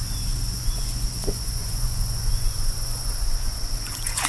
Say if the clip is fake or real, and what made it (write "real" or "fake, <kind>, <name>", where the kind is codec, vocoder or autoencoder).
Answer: fake, vocoder, Vocos